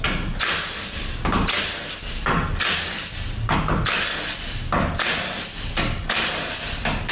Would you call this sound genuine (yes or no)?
yes